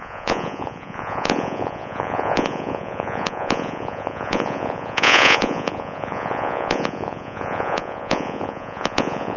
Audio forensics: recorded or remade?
remade